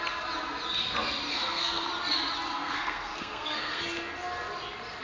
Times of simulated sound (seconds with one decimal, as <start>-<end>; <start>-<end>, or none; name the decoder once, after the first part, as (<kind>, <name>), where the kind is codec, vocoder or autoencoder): 1.3-1.9 (codec, SNAC); 2.5-3.8